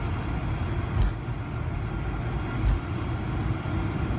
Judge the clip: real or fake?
real